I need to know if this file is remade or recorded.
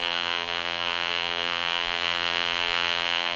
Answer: remade